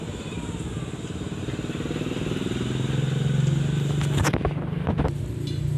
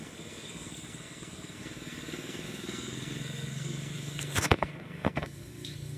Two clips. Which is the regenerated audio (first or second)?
second